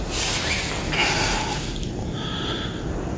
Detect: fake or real real